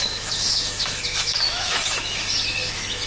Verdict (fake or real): fake